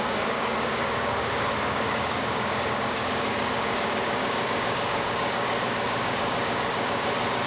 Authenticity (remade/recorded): remade